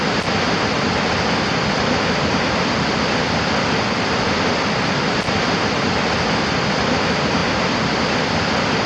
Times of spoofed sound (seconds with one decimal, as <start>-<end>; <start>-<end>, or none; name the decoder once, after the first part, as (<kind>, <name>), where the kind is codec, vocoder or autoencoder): none